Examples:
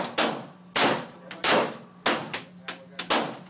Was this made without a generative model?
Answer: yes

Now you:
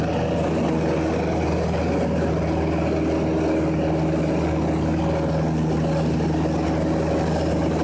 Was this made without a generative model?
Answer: yes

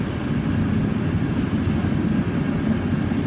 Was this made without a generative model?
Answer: yes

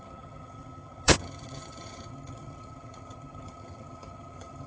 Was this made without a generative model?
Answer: no